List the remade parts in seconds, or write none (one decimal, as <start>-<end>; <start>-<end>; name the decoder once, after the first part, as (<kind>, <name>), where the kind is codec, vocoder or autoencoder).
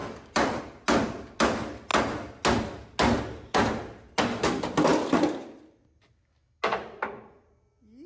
0.0-0.6 (vocoder, BigVGAN v2); 4.9-5.6; 6.7-7.3